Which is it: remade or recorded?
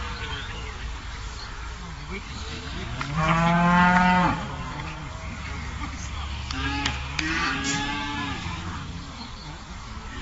remade